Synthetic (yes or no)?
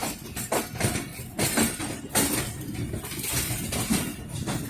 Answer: no